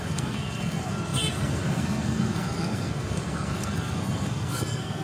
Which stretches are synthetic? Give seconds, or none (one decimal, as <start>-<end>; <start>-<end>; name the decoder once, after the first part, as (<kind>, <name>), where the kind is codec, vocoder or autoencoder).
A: 0.0-5.0 (codec, SNAC)